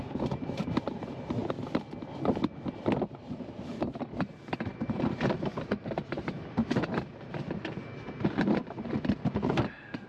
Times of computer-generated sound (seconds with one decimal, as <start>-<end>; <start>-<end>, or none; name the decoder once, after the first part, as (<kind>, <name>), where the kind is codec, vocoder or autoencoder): 0.0-1.4 (vocoder, BigVGAN v2); 3.2-10.1